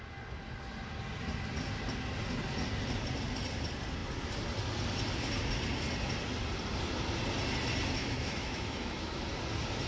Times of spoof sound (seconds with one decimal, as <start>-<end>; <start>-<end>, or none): 8.0-9.2

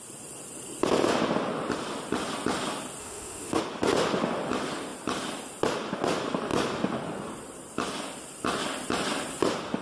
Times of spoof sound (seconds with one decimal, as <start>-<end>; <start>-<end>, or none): 3.0-3.6

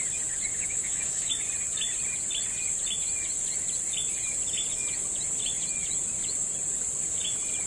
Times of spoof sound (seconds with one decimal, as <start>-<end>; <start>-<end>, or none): 0.5-1.3

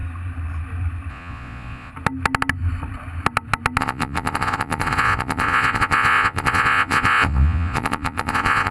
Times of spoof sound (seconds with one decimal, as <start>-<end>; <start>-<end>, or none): 1.1-1.9; 3.8-8.7

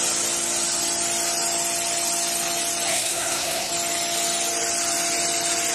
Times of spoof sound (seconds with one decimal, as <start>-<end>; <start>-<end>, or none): 2.9-3.7